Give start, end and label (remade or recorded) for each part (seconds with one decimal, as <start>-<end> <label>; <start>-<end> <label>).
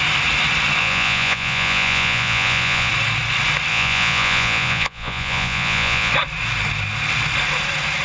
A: 0.0-0.8 recorded; 0.8-2.9 remade; 2.9-3.7 recorded; 3.7-6.1 remade; 6.1-8.0 recorded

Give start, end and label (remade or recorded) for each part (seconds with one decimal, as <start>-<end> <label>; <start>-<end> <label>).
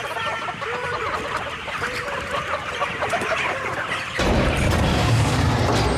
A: 0.0-4.9 recorded; 4.9-5.5 remade; 5.5-6.0 recorded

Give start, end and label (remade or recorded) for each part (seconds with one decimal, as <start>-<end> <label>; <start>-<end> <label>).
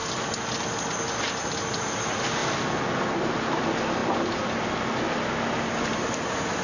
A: 0.0-6.6 recorded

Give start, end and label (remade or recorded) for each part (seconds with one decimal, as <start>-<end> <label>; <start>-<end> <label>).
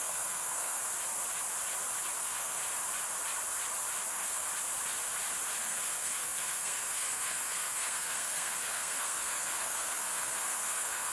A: 0.0-0.8 remade; 0.8-2.2 recorded; 2.2-2.6 remade; 2.6-4.1 recorded; 4.1-4.5 remade; 4.5-5.6 recorded; 5.6-11.1 remade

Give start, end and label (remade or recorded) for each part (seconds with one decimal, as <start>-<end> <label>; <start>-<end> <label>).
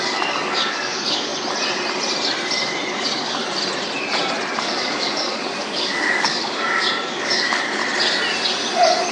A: 0.0-1.3 remade; 1.3-2.9 recorded; 2.9-3.4 remade; 3.4-4.5 recorded; 4.5-7.8 remade; 7.8-9.1 recorded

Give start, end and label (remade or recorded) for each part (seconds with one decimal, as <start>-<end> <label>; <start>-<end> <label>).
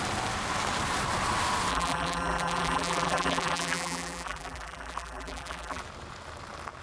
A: 0.0-1.7 recorded; 1.7-5.8 remade; 5.8-6.8 recorded